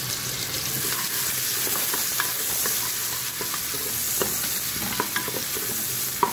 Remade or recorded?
recorded